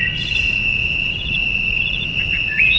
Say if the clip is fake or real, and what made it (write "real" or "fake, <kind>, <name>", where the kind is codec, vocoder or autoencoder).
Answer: fake, vocoder, Vocos